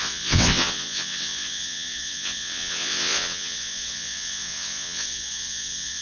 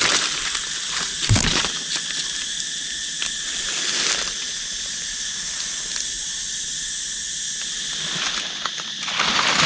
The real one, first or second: second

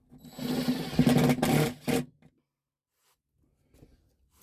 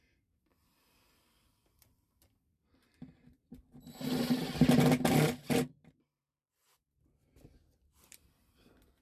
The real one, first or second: first